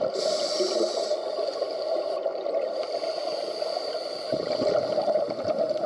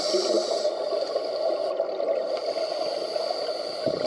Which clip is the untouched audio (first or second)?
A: second